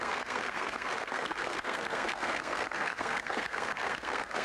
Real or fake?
fake